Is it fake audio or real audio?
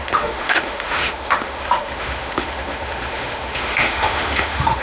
fake